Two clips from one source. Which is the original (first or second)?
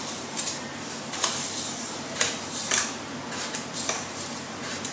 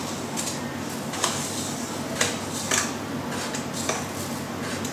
second